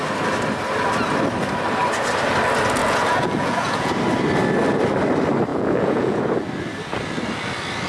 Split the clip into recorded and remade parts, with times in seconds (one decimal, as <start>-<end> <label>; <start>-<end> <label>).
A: 0.0-2.8 recorded; 2.8-3.9 remade; 3.9-5.5 recorded; 5.5-6.2 remade; 6.2-7.9 recorded